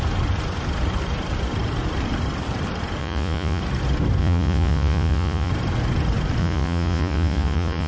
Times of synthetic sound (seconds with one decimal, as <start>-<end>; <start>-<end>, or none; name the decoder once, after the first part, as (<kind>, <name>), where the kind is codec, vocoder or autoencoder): 3.0-3.6 (vocoder, Vocos); 4.2-5.5; 6.4-7.9